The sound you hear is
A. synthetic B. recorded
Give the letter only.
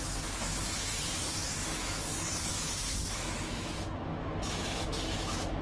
A